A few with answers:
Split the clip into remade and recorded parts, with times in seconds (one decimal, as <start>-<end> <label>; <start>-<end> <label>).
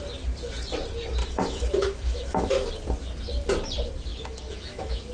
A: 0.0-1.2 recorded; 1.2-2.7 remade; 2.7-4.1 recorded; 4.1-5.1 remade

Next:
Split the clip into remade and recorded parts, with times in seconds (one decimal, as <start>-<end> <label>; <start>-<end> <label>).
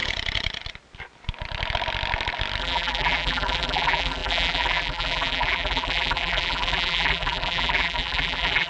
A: 0.0-2.6 recorded; 2.6-8.7 remade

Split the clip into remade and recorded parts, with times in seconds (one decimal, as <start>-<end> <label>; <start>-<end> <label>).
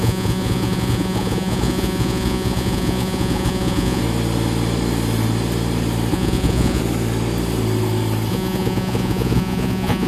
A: 0.0-4.0 remade; 4.0-6.1 recorded; 6.1-6.8 remade; 6.8-8.3 recorded; 8.3-10.1 remade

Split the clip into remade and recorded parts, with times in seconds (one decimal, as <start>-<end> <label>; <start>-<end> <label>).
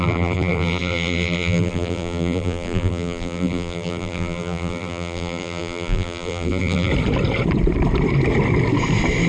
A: 0.0-6.9 remade; 6.9-9.3 recorded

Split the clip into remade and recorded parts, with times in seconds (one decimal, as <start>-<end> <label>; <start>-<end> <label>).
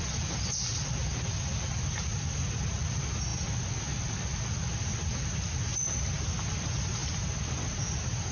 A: 0.0-8.3 recorded